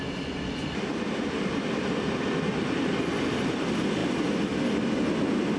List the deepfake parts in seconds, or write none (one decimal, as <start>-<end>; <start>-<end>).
none